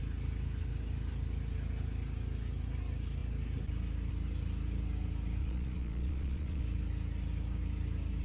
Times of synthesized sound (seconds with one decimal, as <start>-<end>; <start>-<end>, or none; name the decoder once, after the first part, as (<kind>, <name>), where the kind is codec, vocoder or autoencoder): 5.4-6.6 (vocoder, Vocos)